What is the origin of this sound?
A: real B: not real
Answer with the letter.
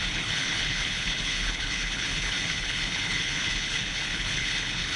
B